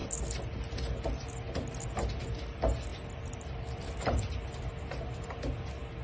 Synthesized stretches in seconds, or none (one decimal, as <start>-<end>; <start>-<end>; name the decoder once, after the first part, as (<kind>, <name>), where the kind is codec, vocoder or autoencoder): 2.9-5.5 (vocoder, BigVGAN v2)